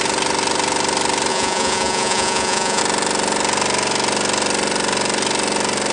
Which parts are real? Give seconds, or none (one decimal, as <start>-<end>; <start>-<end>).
0.0-1.3; 2.8-5.9

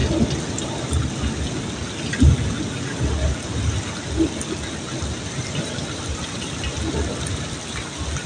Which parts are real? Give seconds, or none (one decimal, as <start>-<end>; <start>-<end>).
0.0-8.3

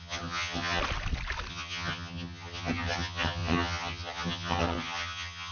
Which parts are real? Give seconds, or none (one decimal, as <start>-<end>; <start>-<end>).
0.8-1.5